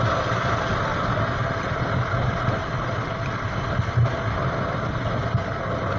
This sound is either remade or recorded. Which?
recorded